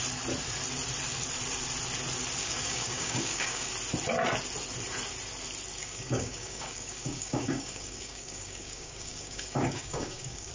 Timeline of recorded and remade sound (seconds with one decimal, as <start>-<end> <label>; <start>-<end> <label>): 0.0-2.4 recorded; 2.4-3.7 remade; 3.7-5.8 recorded; 5.8-10.5 remade